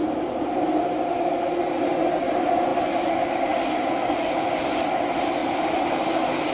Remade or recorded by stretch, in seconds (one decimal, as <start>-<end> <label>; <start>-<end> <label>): 0.0-6.5 recorded